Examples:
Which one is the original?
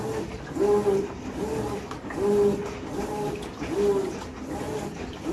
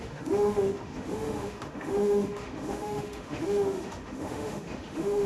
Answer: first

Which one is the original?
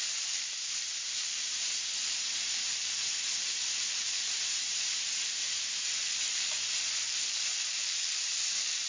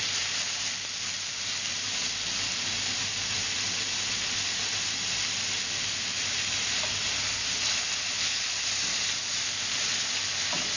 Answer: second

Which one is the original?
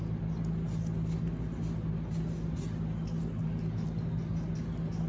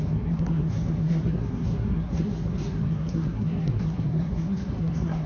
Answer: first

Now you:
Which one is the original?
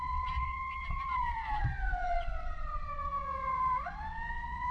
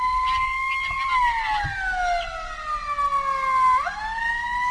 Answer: second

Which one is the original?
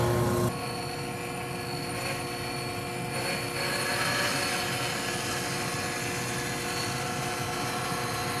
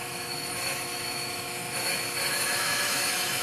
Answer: first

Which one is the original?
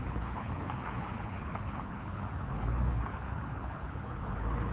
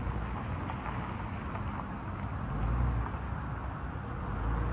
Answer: second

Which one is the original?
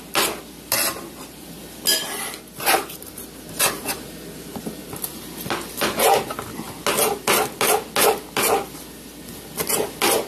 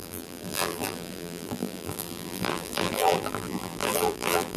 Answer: first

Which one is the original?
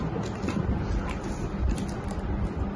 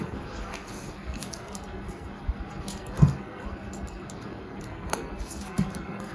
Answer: first